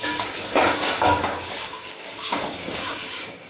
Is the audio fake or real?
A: fake